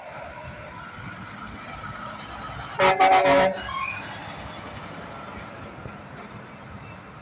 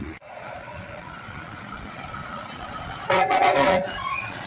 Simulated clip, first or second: second